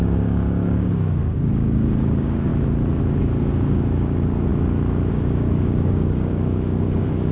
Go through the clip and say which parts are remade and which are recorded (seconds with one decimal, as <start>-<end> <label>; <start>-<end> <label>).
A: 0.0-2.5 remade; 2.5-3.2 recorded; 3.2-4.5 remade; 4.5-5.1 recorded; 5.1-7.3 remade